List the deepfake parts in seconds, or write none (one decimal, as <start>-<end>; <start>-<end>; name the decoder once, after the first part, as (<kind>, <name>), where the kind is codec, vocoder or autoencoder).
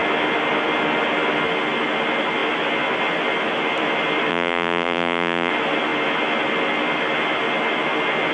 4.3-5.5 (vocoder, BigVGAN v2)